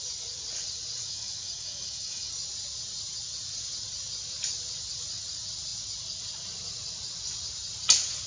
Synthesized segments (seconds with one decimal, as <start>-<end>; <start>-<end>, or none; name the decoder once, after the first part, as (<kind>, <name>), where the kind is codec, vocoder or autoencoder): 1.0-2.3 (autoencoder, DAC-VAE)